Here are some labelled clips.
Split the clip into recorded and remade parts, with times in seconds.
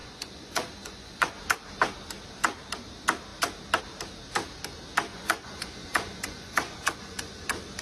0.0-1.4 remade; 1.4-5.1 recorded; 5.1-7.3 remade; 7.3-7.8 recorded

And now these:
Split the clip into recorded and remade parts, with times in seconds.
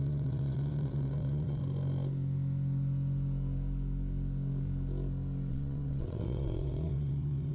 0.0-1.6 remade; 1.6-5.5 recorded; 5.5-7.5 remade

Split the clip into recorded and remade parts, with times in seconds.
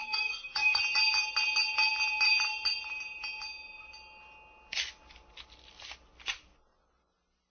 0.0-0.8 remade; 0.8-7.5 recorded